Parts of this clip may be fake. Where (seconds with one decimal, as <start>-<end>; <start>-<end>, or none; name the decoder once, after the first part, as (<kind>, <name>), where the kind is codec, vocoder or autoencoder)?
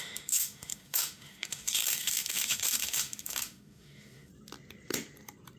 0.0-4.3 (autoencoder, DAC-VAE)